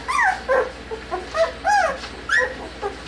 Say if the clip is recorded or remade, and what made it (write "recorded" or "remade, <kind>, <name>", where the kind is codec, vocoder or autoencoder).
recorded